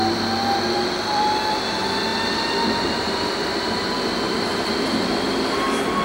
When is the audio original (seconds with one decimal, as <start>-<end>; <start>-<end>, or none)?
none